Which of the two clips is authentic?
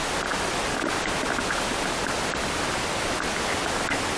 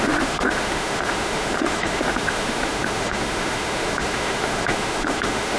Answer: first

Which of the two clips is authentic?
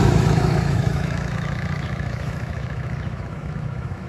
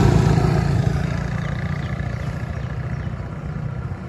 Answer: second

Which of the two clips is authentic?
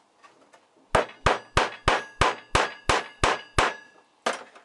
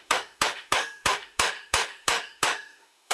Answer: first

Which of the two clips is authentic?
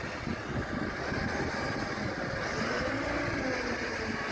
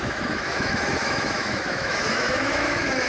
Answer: first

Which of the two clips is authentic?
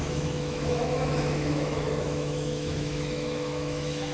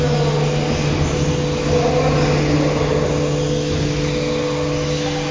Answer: second